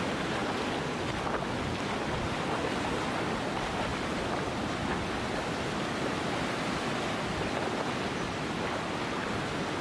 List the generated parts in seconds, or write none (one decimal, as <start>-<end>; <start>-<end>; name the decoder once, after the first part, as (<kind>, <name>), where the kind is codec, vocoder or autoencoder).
none